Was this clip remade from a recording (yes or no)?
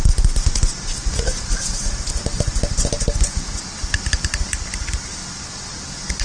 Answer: no